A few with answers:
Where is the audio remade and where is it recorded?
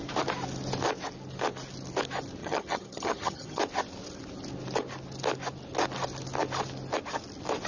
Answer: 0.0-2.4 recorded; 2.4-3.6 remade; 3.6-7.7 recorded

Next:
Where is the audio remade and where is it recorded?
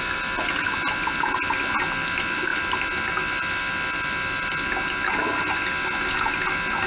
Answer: 0.0-6.9 recorded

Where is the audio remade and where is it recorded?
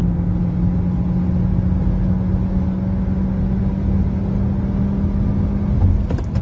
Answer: 0.0-6.4 recorded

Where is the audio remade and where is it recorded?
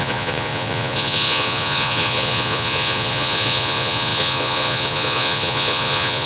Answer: 0.0-6.3 remade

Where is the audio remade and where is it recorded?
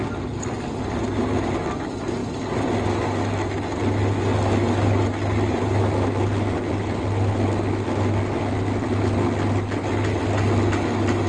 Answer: 0.0-11.3 recorded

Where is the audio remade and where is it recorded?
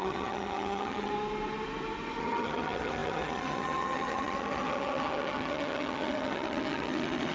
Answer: 0.0-1.1 remade; 1.1-2.2 recorded; 2.2-7.3 remade